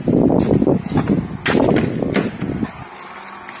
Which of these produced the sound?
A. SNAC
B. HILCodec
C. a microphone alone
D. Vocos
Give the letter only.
C